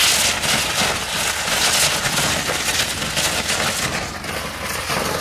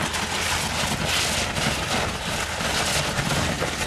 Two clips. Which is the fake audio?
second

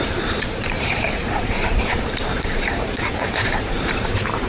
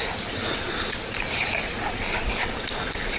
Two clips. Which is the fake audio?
first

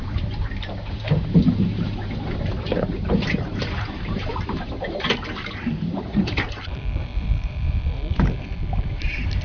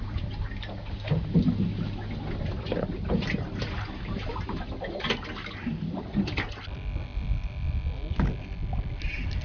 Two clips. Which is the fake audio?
first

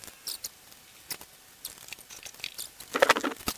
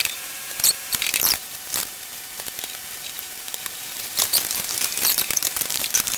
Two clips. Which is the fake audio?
second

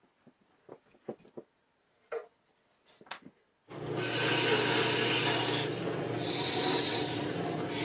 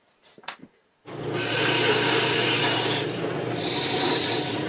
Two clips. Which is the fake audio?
second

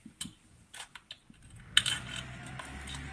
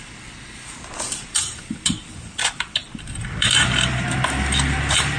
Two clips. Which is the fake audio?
second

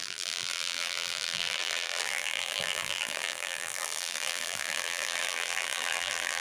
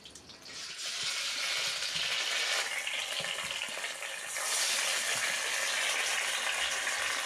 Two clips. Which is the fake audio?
first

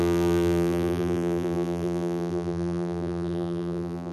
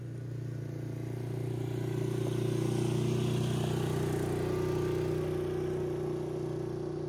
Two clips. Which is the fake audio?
first